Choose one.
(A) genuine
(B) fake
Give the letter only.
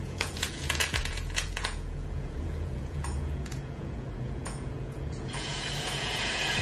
B